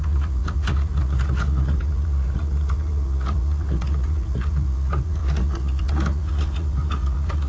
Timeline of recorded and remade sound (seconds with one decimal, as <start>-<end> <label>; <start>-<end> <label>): 0.0-7.5 remade